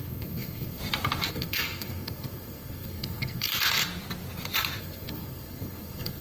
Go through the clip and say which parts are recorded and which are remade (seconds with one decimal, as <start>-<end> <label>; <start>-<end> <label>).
0.0-0.8 remade; 0.8-1.3 recorded; 1.3-3.5 remade; 3.5-4.8 recorded; 4.8-6.2 remade

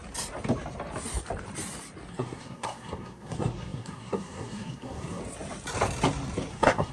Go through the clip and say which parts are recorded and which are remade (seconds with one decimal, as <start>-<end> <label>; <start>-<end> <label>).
0.0-2.1 recorded; 2.1-5.2 remade; 5.2-6.5 recorded; 6.5-6.9 remade